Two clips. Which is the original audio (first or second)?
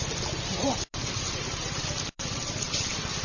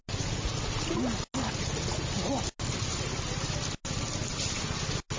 second